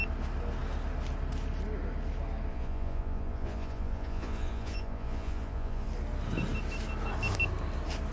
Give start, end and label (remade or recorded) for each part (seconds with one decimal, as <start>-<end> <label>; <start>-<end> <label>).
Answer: 0.0-2.5 recorded; 2.5-5.9 remade; 5.9-8.1 recorded